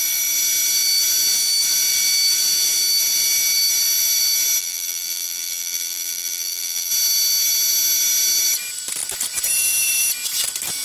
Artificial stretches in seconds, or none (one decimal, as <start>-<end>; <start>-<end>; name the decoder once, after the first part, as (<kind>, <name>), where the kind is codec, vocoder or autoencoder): 4.6-6.9 (vocoder, BigVGAN v2)